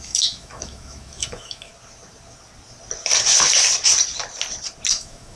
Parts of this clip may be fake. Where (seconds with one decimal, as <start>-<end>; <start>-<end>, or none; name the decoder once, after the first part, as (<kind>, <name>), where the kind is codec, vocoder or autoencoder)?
0.0-1.7 (autoencoder, DAC-VAE); 4.9-5.4